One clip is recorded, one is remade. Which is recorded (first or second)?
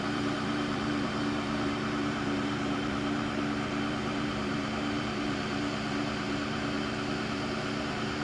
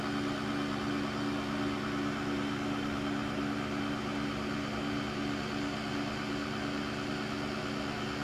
second